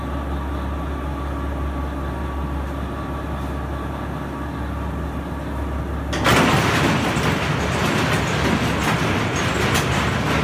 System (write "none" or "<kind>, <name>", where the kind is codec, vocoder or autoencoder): none